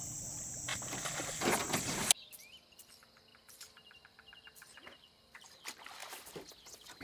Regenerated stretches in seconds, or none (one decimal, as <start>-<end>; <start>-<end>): 3.3-5.6